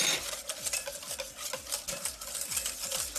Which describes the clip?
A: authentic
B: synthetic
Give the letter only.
A